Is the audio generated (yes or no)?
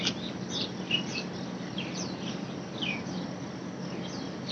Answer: no